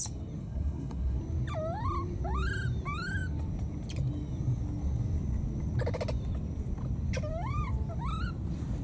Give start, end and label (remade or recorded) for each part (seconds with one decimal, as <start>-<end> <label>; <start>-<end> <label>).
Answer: 0.0-0.4 recorded; 0.4-1.2 remade; 1.2-8.8 recorded